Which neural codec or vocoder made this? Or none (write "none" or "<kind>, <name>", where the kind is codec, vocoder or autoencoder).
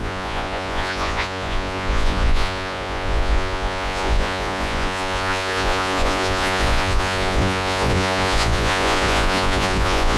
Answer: vocoder, Vocos